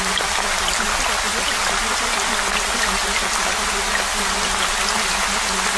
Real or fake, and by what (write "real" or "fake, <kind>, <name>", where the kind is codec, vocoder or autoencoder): real